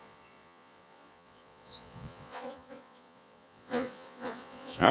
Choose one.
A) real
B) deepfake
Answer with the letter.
B